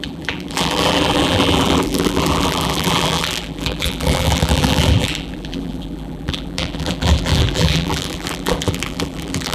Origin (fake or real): fake